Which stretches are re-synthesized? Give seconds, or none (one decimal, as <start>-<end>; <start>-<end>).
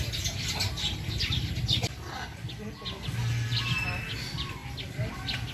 none